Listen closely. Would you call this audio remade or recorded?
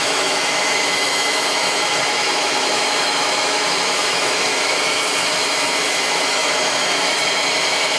remade